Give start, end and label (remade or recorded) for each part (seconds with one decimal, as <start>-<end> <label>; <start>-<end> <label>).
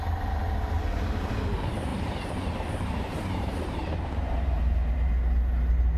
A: 0.0-1.9 recorded; 1.9-5.1 remade; 5.1-6.0 recorded